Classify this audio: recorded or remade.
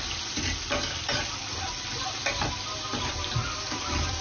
remade